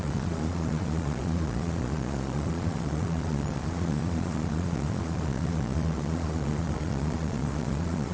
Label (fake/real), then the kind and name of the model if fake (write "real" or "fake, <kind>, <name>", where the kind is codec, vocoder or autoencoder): fake, vocoder, Vocos